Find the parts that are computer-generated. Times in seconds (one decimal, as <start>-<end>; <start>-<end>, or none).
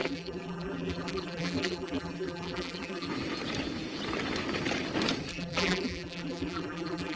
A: 0.0-3.1; 5.3-7.2